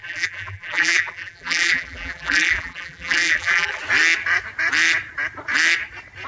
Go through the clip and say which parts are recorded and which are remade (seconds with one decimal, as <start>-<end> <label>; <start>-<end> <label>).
0.0-3.8 remade; 3.8-6.3 recorded